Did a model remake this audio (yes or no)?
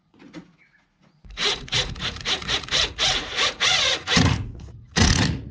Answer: yes